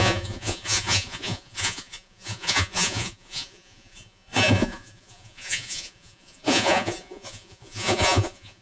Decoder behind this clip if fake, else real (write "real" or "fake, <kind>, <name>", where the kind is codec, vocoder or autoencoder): fake, vocoder, Vocos